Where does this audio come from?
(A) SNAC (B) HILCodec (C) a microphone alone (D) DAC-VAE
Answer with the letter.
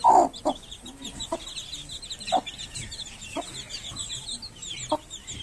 C